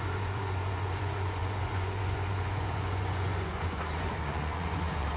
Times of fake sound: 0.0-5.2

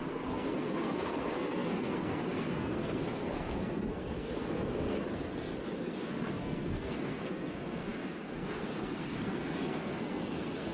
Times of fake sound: 0.0-10.7

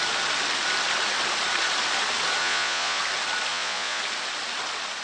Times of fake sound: 2.4-3.0; 3.5-4.0

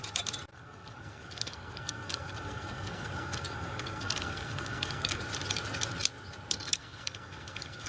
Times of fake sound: 0.5-5.2; 6.7-7.9

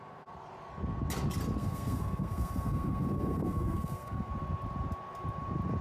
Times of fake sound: 1.6-4.3